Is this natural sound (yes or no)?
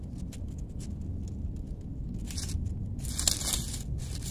yes